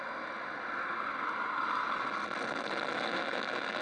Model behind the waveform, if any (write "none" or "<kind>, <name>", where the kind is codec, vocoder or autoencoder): none